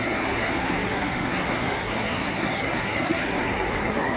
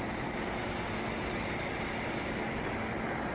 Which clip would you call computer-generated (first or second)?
first